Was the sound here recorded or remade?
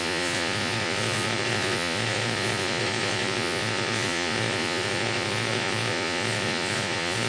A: remade